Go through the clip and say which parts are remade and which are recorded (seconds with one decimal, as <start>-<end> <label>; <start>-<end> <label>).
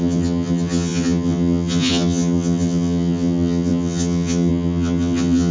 0.0-5.5 remade